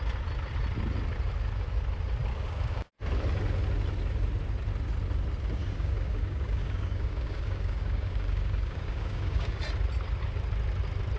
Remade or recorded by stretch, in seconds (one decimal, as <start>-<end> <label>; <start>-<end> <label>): 0.0-2.3 recorded; 2.3-3.0 remade; 3.0-5.6 recorded; 5.6-9.6 remade; 9.6-11.2 recorded